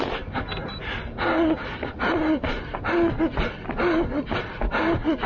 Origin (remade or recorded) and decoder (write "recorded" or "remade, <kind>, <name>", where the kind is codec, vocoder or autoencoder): recorded